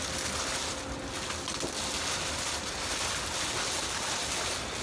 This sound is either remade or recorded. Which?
recorded